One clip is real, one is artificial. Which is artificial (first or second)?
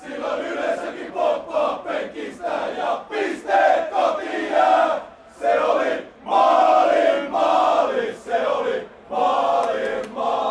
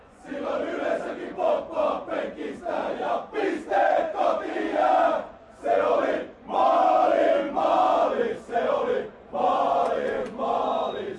second